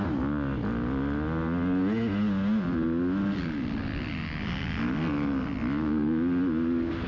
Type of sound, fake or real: real